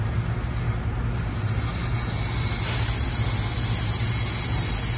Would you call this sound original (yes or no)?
yes